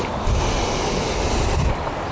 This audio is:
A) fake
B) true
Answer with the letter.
B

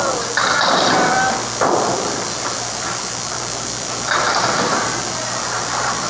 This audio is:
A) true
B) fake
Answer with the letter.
B